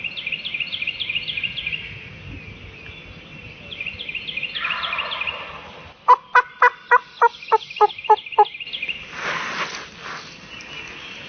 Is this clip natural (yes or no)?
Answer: yes